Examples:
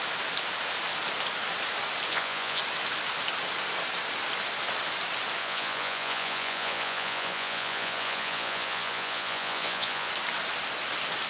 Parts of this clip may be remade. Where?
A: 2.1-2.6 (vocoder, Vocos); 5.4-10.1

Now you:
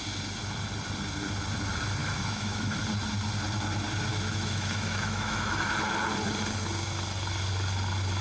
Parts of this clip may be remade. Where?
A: 2.0-2.8 (autoencoder, DAC-VAE); 4.1-5.7

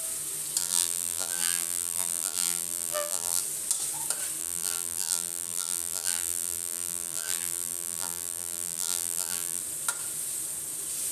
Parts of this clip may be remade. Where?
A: 0.6-3.4 (vocoder, BigVGAN v2); 4.4-9.6

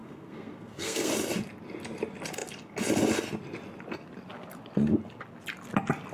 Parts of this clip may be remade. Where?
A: 0.0-1.1 (codec, SNAC)

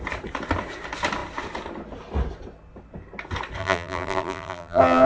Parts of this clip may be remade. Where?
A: 3.6-5.1 (vocoder, BigVGAN v2)